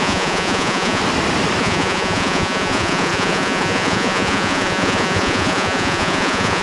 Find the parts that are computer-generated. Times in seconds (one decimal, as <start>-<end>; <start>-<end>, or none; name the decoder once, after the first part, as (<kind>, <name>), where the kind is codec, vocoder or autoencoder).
0.0-1.0 (vocoder, Vocos); 1.6-6.6